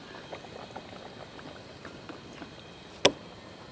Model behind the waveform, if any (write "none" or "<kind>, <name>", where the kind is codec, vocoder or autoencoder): none